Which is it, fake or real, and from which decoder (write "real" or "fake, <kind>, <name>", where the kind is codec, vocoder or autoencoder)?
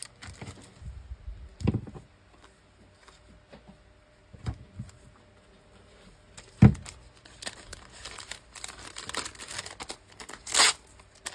real